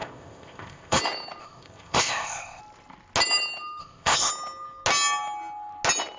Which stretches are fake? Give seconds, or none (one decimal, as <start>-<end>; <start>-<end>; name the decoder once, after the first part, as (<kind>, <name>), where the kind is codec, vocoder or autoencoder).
0.0-1.0 (codec, ZipCodec); 1.4-2.6; 3.8-4.3